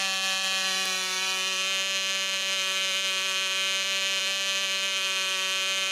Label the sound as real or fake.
fake